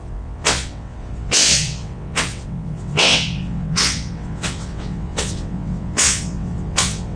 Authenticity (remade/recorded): remade